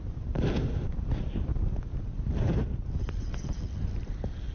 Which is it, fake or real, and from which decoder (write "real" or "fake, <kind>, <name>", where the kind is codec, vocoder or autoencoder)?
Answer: real